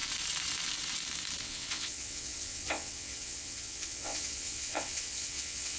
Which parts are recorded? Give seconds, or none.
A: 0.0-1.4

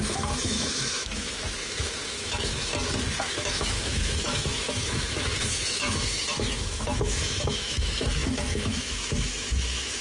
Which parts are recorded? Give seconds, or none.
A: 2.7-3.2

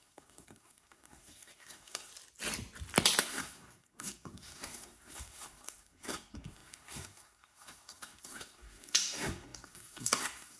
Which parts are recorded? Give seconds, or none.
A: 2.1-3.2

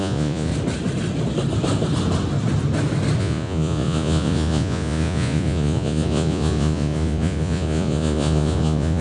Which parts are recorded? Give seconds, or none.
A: 0.5-3.2

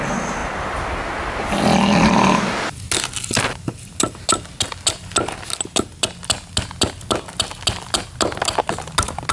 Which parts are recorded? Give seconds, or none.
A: 0.0-9.3

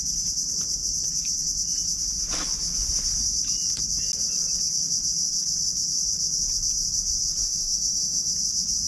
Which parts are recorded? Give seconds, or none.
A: 0.0-7.4; 8.3-8.9